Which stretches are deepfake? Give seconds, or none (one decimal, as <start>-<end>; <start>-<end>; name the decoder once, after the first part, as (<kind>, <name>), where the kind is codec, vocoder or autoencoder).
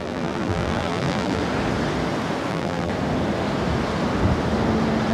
0.0-1.4 (vocoder, BigVGAN v2); 2.5-2.9